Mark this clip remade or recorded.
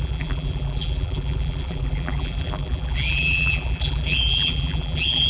remade